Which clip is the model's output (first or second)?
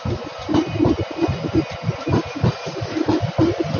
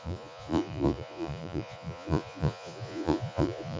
second